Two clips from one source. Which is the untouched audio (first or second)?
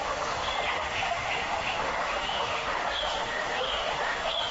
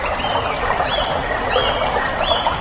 second